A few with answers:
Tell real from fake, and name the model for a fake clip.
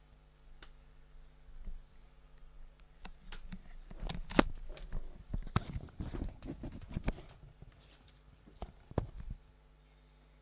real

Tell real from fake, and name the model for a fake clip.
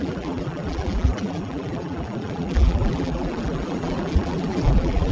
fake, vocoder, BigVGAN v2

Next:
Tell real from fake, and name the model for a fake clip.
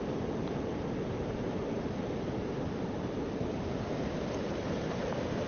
fake, vocoder, BigVGAN v2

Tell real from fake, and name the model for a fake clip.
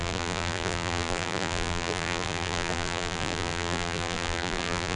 fake, vocoder, BigVGAN v2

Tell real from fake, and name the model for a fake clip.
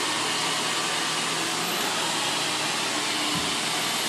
real